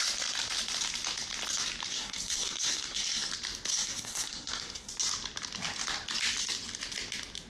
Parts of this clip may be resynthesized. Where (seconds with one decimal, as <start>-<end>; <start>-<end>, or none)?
1.9-3.3; 3.7-4.9